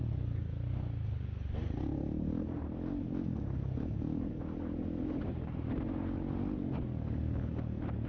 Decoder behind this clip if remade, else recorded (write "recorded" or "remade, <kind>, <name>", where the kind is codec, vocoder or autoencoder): recorded